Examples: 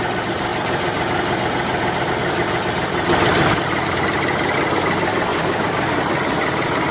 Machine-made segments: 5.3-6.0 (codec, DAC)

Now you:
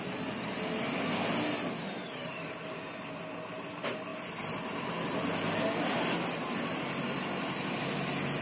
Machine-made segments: none

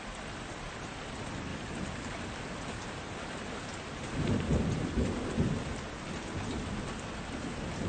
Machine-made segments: 1.5-5.4 (vocoder, BigVGAN v2)

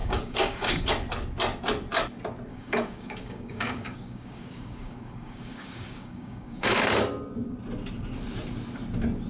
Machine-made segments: 0.0-0.9 (codec, DAC); 2.5-6.8

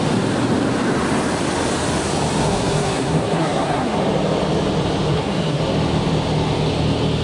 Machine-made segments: 2.4-4.0 (codec, SNAC); 5.1-5.6

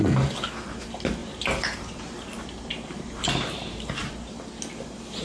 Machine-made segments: 1.2-4.3 (vocoder, BigVGAN v2)